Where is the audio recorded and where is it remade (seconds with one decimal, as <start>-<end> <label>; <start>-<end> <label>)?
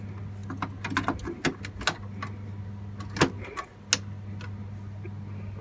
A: 0.0-5.6 recorded